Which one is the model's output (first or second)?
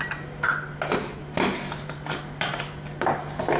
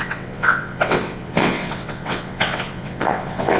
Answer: second